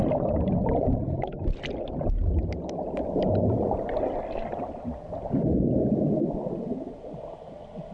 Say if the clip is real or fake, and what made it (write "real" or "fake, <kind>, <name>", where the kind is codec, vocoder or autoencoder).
real